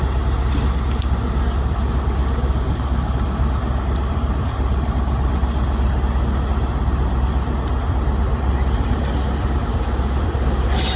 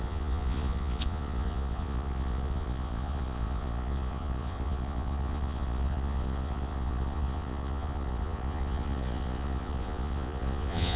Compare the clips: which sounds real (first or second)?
first